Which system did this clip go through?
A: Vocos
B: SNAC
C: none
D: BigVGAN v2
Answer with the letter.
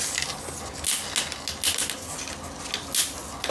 C